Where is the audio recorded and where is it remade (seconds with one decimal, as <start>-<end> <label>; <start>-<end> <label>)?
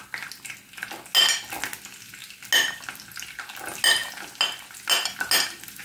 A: 0.0-5.8 recorded